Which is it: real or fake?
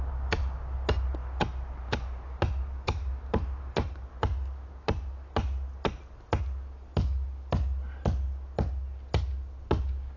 real